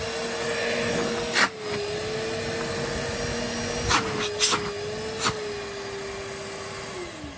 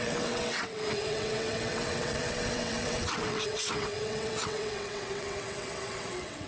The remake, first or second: second